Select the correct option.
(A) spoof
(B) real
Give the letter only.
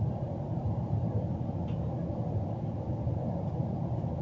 B